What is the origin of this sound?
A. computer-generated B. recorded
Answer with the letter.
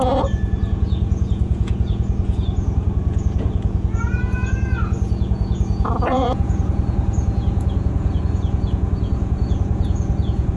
A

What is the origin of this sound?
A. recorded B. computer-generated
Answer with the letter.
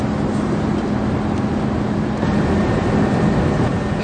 A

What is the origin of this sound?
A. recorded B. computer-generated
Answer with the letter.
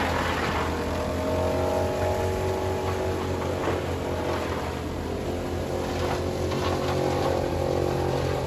A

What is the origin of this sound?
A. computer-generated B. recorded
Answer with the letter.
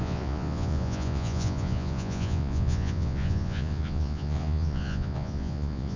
A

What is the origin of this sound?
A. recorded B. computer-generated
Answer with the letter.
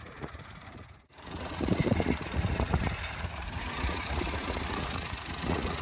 B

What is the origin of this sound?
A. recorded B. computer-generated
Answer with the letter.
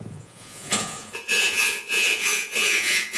B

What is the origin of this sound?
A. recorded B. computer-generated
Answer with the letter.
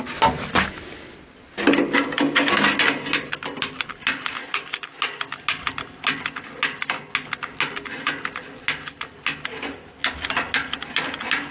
A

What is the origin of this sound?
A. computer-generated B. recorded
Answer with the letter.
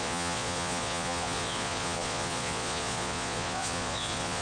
A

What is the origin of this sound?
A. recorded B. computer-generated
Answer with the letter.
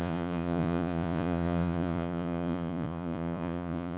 B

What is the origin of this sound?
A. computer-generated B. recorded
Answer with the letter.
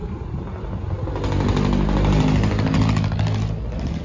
B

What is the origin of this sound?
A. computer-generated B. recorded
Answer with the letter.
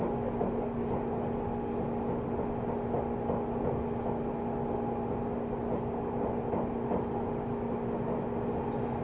B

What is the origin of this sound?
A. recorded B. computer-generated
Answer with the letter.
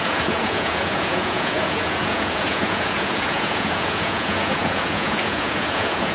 B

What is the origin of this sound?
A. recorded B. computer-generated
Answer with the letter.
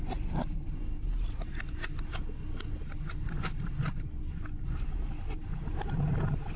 A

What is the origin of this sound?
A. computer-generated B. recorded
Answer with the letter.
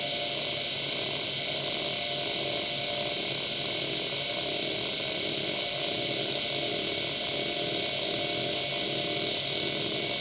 B